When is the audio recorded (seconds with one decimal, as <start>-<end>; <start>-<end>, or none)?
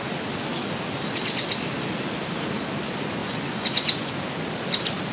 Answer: 0.0-3.2; 4.1-5.1